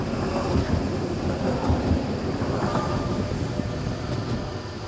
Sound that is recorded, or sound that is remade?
recorded